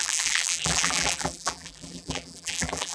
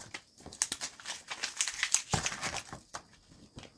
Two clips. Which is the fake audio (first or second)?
first